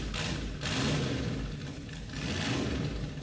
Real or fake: real